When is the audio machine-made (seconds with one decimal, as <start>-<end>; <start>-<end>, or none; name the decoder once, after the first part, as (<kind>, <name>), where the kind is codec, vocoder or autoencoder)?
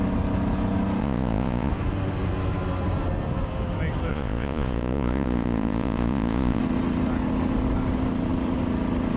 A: 1.0-1.7 (vocoder, Vocos); 4.1-6.6